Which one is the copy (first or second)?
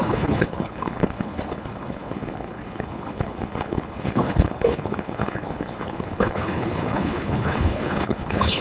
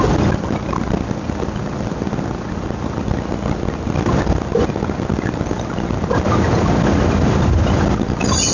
first